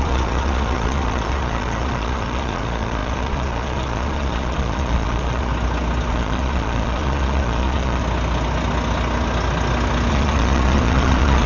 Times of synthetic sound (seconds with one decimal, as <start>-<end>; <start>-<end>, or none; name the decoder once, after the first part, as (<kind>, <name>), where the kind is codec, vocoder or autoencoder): 0.0-5.5 (vocoder, Vocos); 6.1-8.0; 10.1-11.5